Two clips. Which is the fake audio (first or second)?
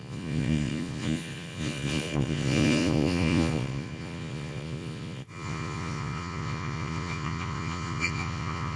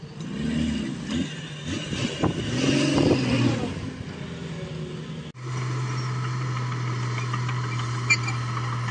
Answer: first